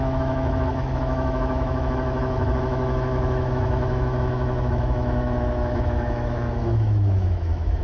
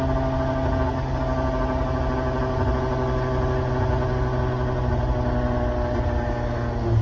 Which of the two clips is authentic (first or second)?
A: second